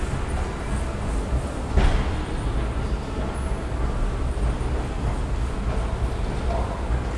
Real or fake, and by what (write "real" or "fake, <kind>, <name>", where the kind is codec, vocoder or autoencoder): real